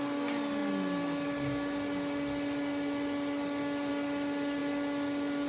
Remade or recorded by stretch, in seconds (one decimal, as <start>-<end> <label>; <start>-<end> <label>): 0.0-5.5 recorded